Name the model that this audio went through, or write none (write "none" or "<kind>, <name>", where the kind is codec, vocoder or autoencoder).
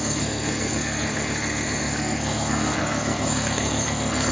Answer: codec, SNAC